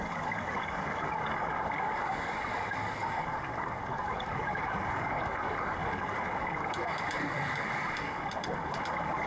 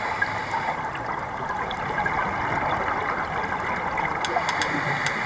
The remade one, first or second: first